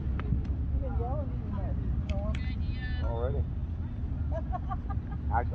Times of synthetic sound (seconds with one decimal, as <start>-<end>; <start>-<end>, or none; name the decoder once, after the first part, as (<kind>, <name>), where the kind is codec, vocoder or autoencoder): none